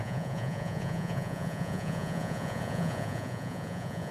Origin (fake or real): fake